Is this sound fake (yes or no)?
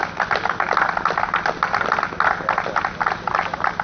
no